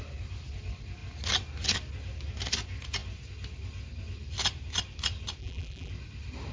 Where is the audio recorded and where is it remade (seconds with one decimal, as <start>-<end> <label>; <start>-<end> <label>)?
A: 0.0-5.4 recorded; 5.4-5.9 remade; 5.9-6.5 recorded